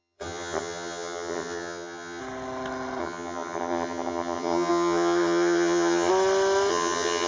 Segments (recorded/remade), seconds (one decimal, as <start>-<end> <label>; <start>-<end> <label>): 0.0-2.2 remade; 2.2-3.0 recorded; 3.0-6.1 remade; 6.1-6.7 recorded; 6.7-7.3 remade